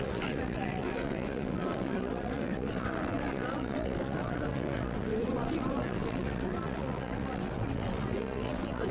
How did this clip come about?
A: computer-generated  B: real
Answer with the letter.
A